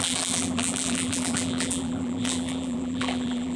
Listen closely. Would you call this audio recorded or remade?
remade